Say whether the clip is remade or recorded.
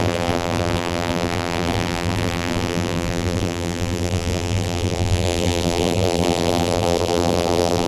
remade